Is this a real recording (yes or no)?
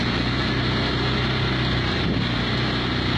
yes